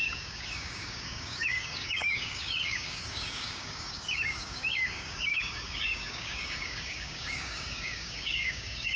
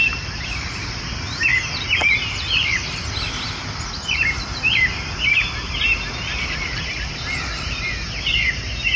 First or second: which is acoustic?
second